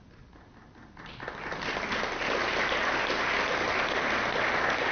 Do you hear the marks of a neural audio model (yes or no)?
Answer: no